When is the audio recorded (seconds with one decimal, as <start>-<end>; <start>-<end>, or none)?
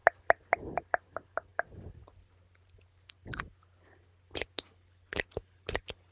0.0-6.1